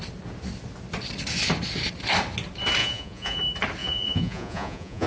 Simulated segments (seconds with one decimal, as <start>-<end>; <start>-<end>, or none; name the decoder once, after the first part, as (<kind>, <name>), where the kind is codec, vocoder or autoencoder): 2.8-3.4 (vocoder, Vocos); 3.8-5.1